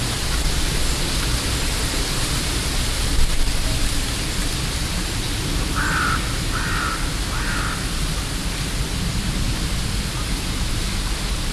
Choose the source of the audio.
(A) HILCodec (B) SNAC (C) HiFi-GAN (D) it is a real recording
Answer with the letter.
D